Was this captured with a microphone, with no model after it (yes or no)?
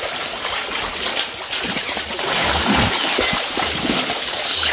yes